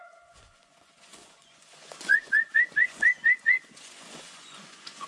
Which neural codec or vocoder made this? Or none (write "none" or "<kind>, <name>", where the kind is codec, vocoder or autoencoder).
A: vocoder, Vocos